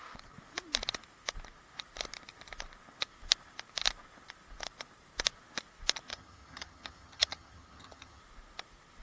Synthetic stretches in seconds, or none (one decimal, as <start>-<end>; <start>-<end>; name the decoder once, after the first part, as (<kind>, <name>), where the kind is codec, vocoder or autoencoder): 6.1-8.2 (vocoder, HiFi-GAN)